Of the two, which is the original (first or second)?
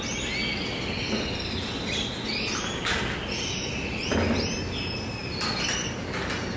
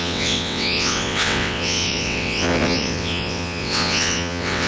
first